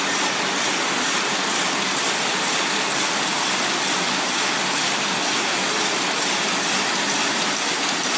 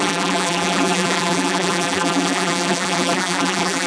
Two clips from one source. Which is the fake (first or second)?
second